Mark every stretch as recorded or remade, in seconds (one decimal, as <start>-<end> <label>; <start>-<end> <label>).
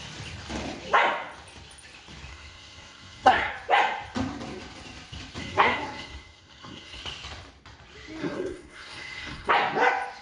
0.0-2.3 recorded; 2.3-3.5 remade; 3.5-5.4 recorded; 5.4-7.0 remade; 7.0-8.2 recorded; 8.2-9.5 remade; 9.5-10.2 recorded